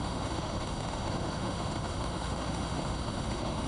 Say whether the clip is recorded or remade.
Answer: remade